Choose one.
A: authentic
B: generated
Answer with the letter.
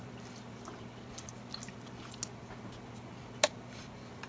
A